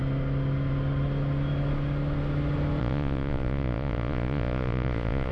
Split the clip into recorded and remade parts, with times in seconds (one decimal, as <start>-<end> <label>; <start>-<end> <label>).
0.0-2.8 recorded; 2.8-5.3 remade